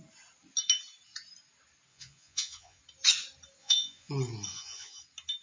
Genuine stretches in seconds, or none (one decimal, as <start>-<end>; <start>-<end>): 0.0-1.9; 2.8-3.6; 4.1-4.5; 5.0-5.4